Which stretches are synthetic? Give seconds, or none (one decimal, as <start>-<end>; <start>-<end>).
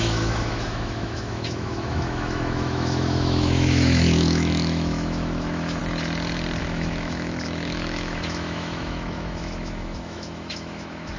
0.0-5.8; 6.6-11.2